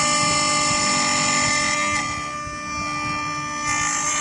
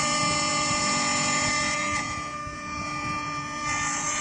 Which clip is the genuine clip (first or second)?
first